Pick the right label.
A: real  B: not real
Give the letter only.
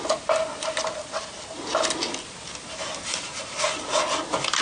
A